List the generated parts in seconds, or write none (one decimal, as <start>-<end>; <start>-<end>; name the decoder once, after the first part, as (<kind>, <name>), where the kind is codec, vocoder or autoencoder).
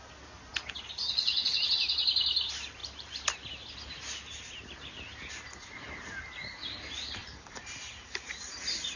7.2-8.6 (vocoder, BigVGAN v2)